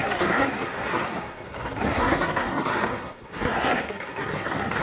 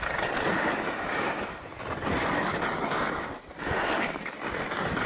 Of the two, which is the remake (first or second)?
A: first